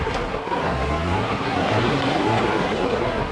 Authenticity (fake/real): fake